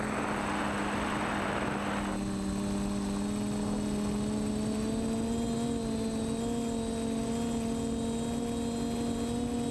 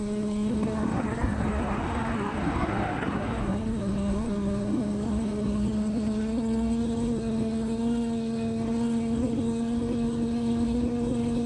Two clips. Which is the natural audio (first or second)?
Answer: first